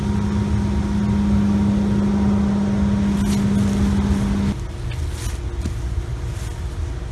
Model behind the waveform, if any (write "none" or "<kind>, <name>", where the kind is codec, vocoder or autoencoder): none